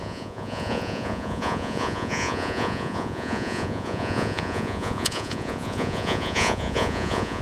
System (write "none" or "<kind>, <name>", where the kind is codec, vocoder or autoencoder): vocoder, Vocos